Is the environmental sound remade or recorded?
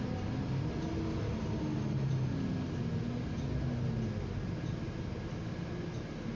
recorded